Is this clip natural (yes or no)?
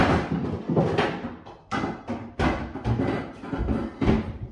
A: yes